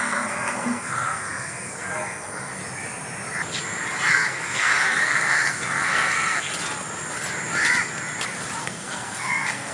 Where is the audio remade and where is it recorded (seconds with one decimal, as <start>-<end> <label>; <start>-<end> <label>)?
0.0-2.6 remade; 2.6-4.1 recorded; 4.1-6.5 remade; 6.5-8.6 recorded; 8.6-9.7 remade